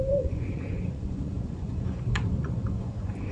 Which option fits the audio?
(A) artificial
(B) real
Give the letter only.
A